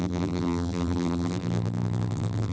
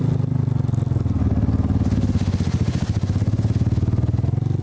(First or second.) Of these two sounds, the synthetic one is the first